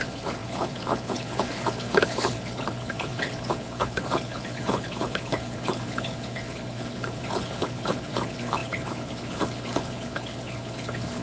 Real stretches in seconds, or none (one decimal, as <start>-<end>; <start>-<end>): none